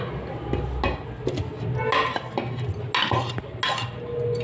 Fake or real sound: real